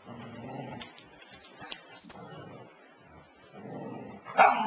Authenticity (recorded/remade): recorded